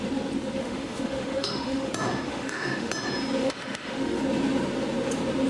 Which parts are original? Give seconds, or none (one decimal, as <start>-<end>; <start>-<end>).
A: 0.0-0.6; 1.9-2.3; 2.9-3.4; 4.2-5.5

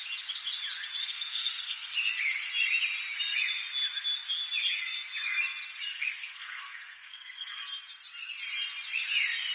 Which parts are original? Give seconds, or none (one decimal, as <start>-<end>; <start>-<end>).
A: 0.0-1.0; 1.9-5.9; 7.6-9.5

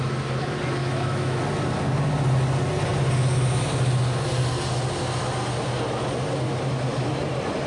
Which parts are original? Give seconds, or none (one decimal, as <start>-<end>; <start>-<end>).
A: 0.0-0.8; 1.4-7.7

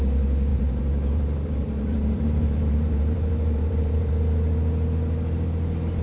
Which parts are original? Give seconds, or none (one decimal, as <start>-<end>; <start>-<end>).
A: 0.0-0.5; 4.1-6.0

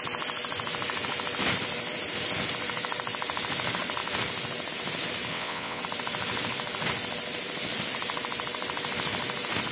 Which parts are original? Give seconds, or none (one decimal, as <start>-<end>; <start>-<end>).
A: 0.0-5.3; 5.8-9.7

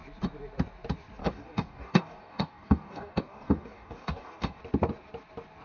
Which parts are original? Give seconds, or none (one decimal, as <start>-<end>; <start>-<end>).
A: 0.0-1.2; 4.6-5.6

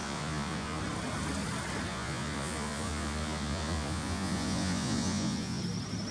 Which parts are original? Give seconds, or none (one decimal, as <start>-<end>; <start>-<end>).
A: 0.8-1.9; 5.6-6.1

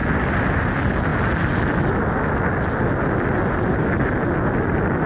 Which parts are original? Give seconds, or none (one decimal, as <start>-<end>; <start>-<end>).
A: 0.0-5.1